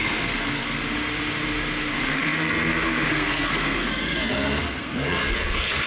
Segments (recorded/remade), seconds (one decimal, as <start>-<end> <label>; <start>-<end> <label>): 0.0-0.8 remade; 0.8-1.9 recorded; 1.9-5.9 remade